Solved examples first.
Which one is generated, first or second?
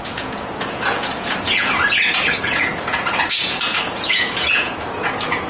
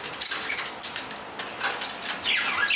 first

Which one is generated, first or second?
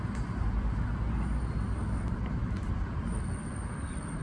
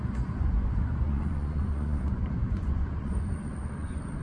second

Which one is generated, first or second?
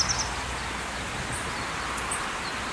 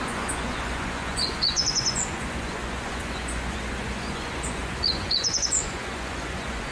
second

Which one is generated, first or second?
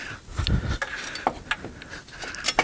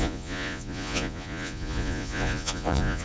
second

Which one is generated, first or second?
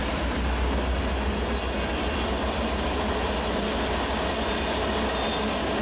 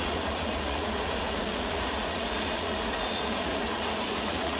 second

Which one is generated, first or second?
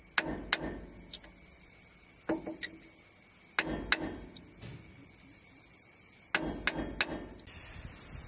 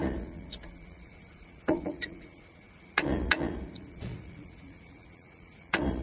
second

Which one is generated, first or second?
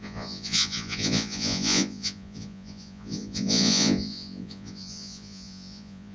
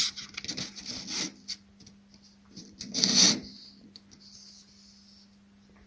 first